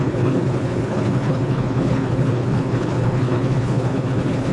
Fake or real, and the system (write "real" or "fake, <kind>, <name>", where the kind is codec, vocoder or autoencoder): fake, codec, HILCodec